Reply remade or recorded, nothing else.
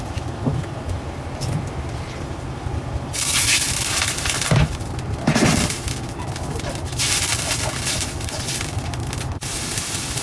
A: recorded